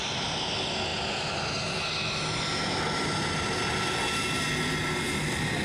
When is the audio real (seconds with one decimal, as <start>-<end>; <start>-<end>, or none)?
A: 0.0-5.6